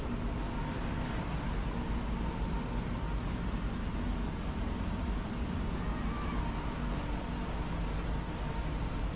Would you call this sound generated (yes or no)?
no